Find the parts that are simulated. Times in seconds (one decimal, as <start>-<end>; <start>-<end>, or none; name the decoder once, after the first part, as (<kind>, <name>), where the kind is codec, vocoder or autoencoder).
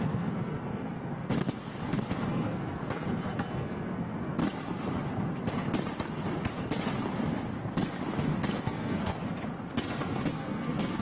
0.0-1.3 (codec, SNAC); 2.3-4.4; 8.6-9.1; 10.3-11.0